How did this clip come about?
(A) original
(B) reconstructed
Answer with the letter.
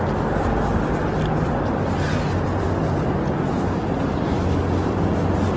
A